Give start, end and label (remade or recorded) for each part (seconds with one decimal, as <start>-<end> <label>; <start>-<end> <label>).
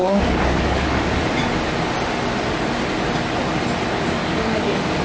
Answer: 0.0-1.2 remade; 1.2-4.2 recorded; 4.2-5.0 remade